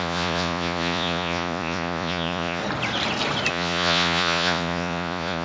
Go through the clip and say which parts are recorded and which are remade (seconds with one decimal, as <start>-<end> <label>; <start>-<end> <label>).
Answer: 0.0-2.6 remade; 2.6-3.5 recorded; 3.5-5.4 remade